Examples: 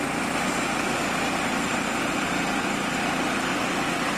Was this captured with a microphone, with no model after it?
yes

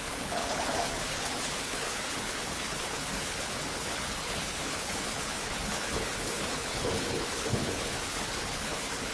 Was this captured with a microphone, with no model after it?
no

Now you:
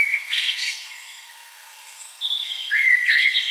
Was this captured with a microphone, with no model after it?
no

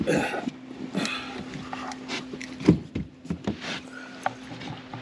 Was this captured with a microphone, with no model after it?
yes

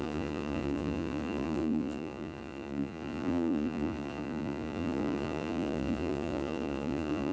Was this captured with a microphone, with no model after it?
no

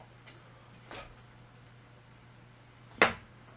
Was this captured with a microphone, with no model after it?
yes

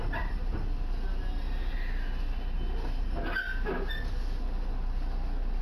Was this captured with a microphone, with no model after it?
yes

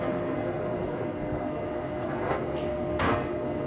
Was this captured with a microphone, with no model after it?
no